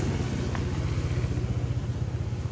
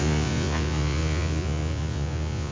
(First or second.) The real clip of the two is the first